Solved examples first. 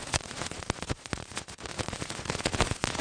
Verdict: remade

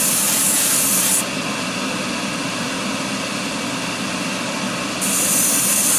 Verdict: recorded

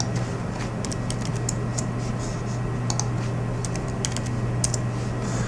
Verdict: recorded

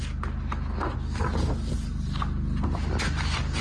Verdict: recorded